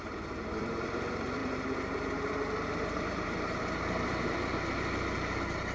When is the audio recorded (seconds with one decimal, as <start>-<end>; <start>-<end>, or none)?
none